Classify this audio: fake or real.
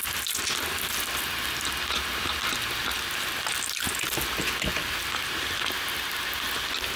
real